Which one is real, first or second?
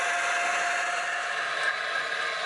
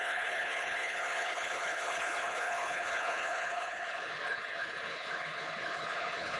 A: first